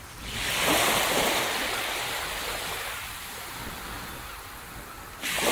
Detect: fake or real real